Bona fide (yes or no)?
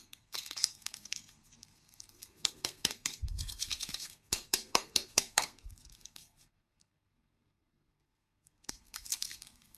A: no